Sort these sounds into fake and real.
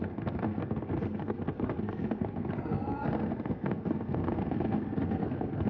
fake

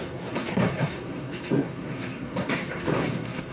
fake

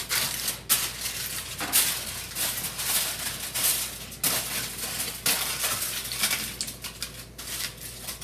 real